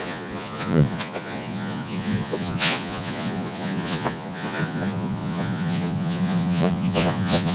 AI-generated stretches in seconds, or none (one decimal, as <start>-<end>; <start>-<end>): 0.0-7.5